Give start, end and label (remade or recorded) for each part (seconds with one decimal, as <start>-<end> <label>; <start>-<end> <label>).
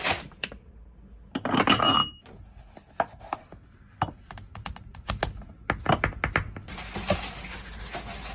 0.0-4.5 recorded; 4.5-5.1 remade; 5.1-8.3 recorded